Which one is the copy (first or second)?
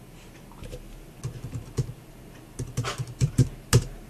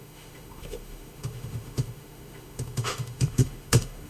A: second